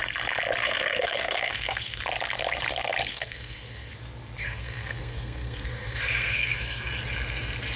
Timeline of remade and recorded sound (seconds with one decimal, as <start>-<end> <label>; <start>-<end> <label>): 0.0-0.6 recorded; 0.6-2.0 remade; 2.0-3.1 recorded; 3.1-3.9 remade; 3.9-4.4 recorded; 4.4-6.9 remade; 6.9-7.8 recorded